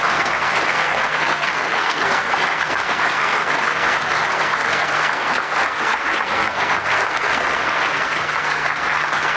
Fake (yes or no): yes